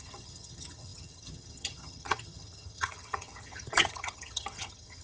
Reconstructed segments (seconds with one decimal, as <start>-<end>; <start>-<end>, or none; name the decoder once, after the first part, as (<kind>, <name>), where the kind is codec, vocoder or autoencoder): 0.0-5.0 (vocoder, HiFi-GAN)